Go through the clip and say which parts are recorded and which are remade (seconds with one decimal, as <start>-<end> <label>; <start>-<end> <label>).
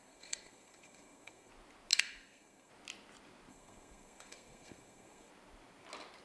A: 0.0-1.5 remade; 1.5-1.9 recorded; 1.9-2.7 remade; 2.7-3.5 recorded; 3.5-5.3 remade; 5.3-6.2 recorded